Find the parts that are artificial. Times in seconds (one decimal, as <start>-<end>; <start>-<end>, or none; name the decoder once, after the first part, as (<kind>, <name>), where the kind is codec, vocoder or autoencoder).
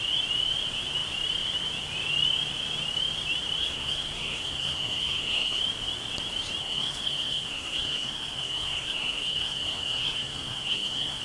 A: 3.6-5.6 (codec, SNAC); 6.6-11.2